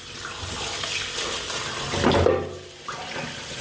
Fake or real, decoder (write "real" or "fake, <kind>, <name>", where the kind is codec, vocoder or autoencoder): real